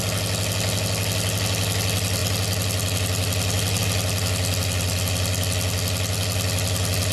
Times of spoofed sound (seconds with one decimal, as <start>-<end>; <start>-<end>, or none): none